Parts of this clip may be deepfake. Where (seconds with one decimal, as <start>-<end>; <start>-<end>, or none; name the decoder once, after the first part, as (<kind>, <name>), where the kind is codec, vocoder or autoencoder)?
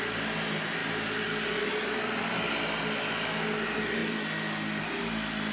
none